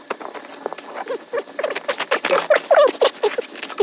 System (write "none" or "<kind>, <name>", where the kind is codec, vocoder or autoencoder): none